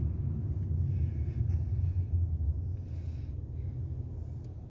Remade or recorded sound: recorded